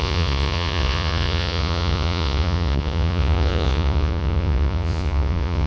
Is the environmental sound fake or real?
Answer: fake